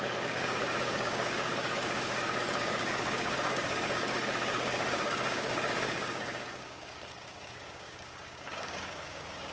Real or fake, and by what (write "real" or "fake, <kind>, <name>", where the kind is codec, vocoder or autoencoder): fake, codec, DAC